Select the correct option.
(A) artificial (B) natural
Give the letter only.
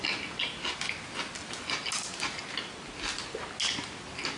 B